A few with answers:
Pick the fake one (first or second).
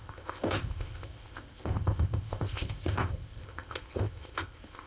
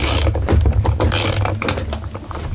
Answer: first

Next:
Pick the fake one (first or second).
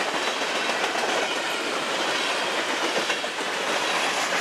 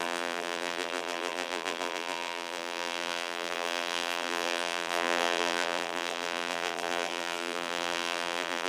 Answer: second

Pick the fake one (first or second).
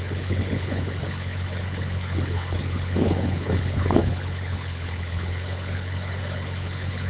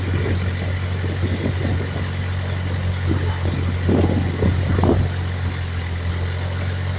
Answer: first